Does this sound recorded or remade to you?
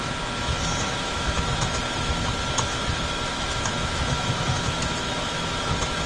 remade